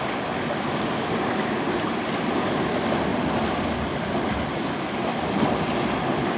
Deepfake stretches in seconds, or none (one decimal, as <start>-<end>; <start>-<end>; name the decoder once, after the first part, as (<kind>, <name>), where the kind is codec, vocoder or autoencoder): none